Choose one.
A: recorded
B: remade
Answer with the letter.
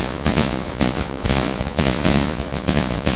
B